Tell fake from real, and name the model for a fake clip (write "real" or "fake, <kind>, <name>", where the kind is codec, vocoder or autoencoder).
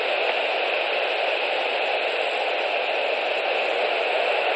real